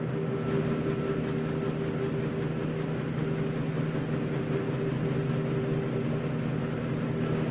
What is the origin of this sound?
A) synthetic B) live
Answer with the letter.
B